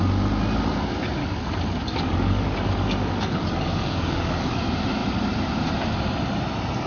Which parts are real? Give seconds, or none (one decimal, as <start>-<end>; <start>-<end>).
0.0-1.2; 4.6-6.9